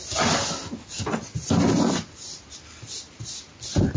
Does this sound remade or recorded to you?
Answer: recorded